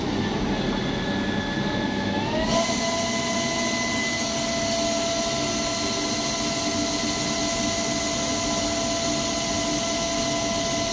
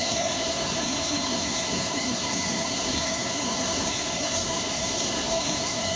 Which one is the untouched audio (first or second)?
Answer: first